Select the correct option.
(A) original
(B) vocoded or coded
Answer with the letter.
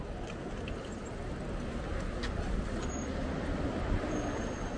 A